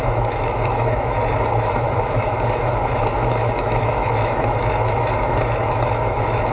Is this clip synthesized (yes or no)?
yes